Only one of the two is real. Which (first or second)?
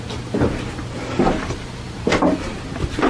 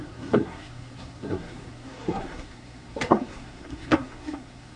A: first